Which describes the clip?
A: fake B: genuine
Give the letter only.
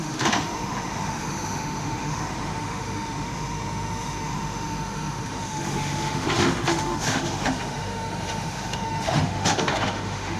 A